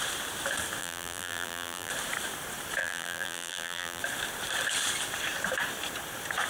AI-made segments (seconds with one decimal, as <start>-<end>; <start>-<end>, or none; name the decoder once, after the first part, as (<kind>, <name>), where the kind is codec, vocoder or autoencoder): 0.8-1.9 (vocoder, BigVGAN v2); 2.8-4.0

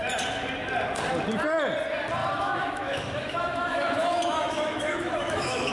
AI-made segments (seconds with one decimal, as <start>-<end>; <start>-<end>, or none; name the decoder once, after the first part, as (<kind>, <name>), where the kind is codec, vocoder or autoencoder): 2.2-5.7 (autoencoder, DAC-VAE)